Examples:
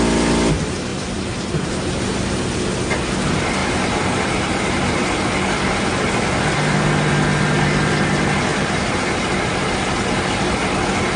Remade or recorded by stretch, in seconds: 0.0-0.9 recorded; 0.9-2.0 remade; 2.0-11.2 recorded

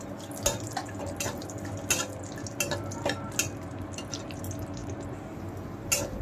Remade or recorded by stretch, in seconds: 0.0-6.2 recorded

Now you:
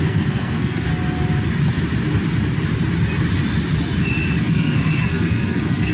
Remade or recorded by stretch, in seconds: 0.0-0.9 remade; 0.9-4.4 recorded; 4.4-5.9 remade

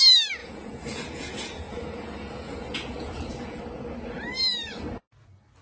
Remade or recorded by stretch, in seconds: 0.0-0.4 recorded; 0.4-3.6 remade; 3.6-5.6 recorded

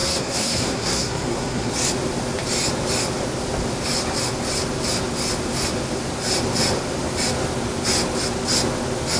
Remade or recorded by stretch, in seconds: 0.0-1.7 remade; 1.7-9.2 recorded

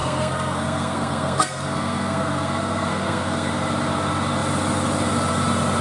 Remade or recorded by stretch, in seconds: 0.0-3.5 remade; 3.5-5.8 recorded

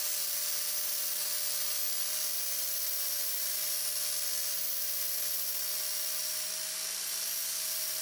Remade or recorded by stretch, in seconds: 0.0-8.0 recorded